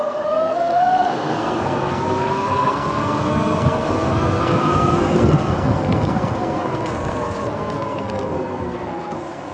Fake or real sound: fake